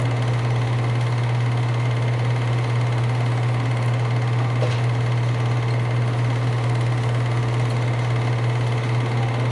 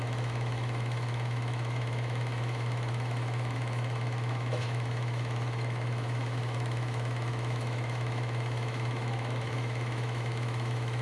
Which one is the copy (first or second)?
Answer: second